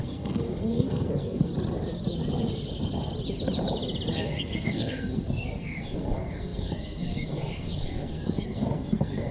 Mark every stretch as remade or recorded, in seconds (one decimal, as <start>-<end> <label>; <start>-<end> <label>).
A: 0.0-1.5 remade; 1.5-4.1 recorded; 4.1-9.3 remade

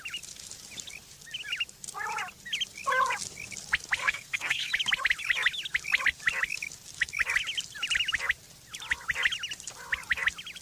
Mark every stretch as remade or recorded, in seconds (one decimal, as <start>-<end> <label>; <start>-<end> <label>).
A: 0.0-4.0 recorded; 4.0-4.7 remade; 4.7-10.6 recorded

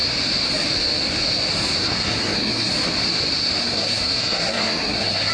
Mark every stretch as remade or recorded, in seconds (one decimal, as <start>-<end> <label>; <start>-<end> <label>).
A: 0.0-1.8 recorded; 1.8-2.7 remade; 2.7-3.6 recorded; 3.6-5.3 remade

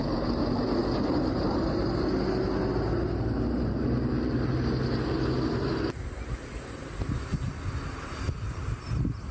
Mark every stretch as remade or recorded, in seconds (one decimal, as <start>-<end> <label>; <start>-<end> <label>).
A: 0.0-9.3 recorded

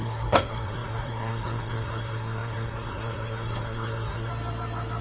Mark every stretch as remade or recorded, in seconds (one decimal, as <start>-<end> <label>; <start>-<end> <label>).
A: 0.0-4.3 remade; 4.3-5.0 recorded

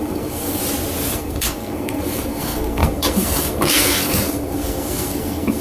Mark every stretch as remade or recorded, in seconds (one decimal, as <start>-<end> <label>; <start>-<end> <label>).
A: 0.0-0.6 remade; 0.6-1.1 recorded; 1.1-5.6 remade

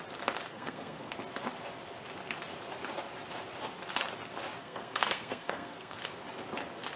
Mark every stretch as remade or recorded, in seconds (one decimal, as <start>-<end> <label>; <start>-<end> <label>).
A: 0.0-0.5 recorded; 0.5-1.1 remade; 1.1-4.6 recorded; 4.6-6.0 remade; 6.0-7.0 recorded

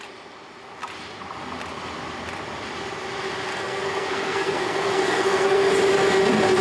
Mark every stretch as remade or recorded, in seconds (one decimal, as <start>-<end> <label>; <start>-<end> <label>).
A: 0.0-3.5 recorded; 3.5-5.7 remade; 5.7-6.6 recorded